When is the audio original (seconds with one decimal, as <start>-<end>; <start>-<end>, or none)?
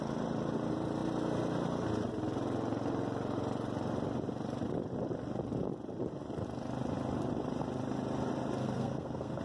0.0-8.6